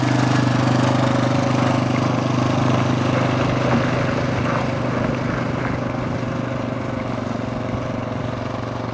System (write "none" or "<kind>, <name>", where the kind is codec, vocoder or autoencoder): none